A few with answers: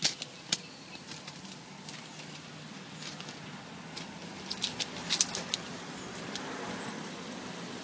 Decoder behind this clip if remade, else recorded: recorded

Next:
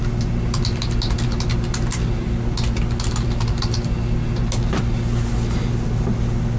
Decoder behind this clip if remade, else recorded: recorded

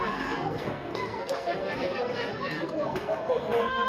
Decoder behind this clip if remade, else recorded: remade, codec, SNAC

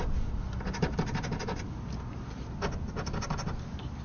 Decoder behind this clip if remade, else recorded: recorded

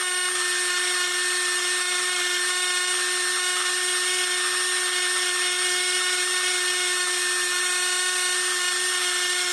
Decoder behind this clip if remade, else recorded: recorded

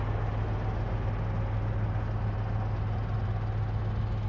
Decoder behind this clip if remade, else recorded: recorded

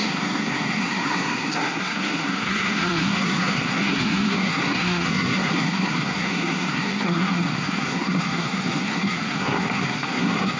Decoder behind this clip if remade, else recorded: remade, codec, SNAC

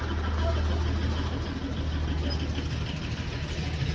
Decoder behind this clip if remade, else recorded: recorded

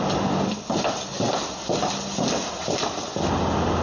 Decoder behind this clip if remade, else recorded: recorded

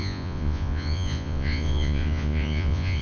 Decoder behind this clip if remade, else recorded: remade, vocoder, Vocos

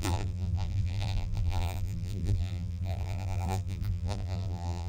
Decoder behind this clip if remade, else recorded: remade, vocoder, BigVGAN v2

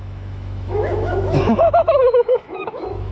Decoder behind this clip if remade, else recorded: remade, autoencoder, DAC-VAE